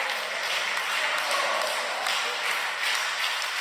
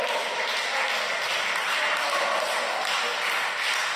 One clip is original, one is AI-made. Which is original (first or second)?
second